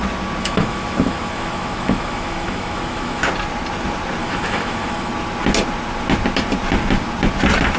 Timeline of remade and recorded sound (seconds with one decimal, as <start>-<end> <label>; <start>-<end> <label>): 0.0-0.4 recorded; 0.4-3.2 remade; 3.2-4.2 recorded; 4.2-5.1 remade; 5.1-7.8 recorded